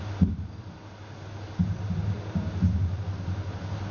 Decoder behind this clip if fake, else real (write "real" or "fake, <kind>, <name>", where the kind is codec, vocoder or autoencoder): real